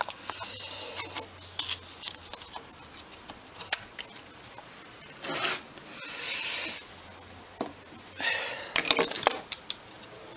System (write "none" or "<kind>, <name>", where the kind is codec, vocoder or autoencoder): none